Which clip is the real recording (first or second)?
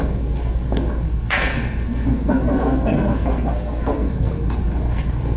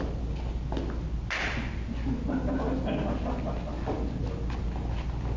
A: second